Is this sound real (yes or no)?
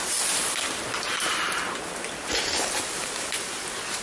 yes